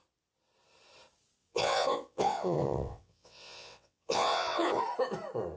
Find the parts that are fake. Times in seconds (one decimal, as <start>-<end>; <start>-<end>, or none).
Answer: 1.4-4.8